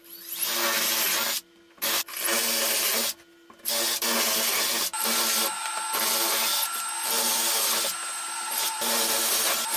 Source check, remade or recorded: recorded